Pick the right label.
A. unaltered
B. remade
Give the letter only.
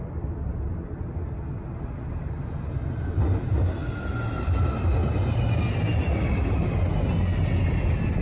A